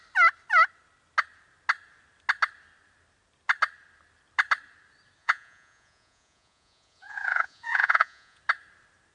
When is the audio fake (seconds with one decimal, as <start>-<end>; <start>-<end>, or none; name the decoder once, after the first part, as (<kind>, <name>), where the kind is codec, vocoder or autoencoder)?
5.2-8.4 (vocoder, Vocos)